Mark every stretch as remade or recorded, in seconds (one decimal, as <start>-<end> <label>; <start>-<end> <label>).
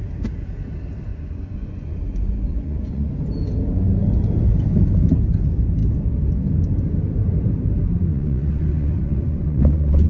0.0-1.1 recorded; 1.1-3.1 remade; 3.1-8.1 recorded; 8.1-10.1 remade